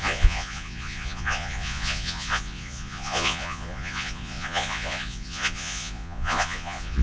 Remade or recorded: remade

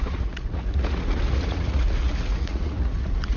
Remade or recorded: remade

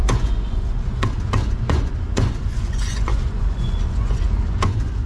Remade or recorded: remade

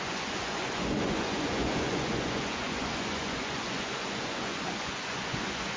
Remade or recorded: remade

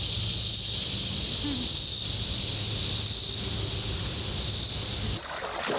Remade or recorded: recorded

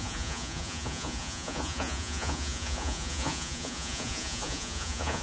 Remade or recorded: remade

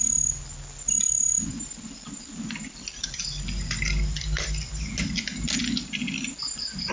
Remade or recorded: recorded